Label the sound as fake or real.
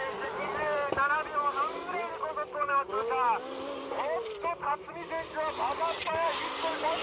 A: fake